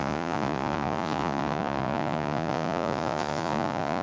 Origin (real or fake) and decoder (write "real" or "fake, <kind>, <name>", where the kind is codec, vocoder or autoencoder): fake, vocoder, Vocos